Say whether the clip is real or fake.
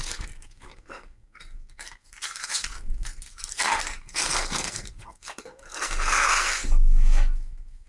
fake